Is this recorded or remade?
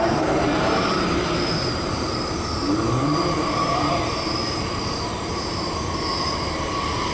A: remade